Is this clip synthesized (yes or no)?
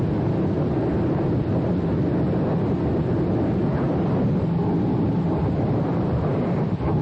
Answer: no